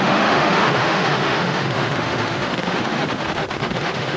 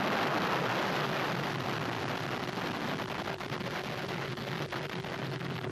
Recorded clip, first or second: second